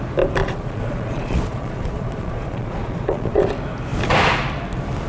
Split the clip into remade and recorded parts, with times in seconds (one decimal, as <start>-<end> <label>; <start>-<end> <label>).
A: 0.0-0.4 recorded; 0.4-3.5 remade; 3.5-5.1 recorded